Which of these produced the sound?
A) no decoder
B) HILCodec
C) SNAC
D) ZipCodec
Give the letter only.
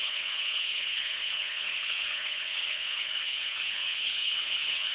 B